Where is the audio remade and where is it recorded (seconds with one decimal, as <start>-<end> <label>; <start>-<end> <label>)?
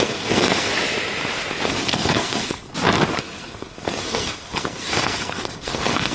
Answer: 0.0-0.7 remade; 0.7-1.7 recorded; 1.7-2.7 remade; 2.7-3.2 recorded; 3.2-6.1 remade